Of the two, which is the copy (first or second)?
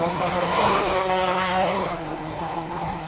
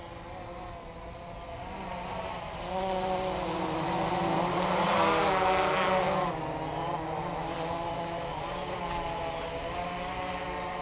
first